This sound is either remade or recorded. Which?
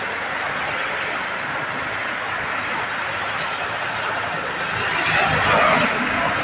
recorded